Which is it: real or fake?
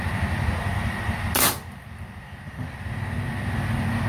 real